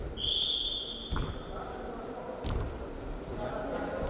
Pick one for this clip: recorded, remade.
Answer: recorded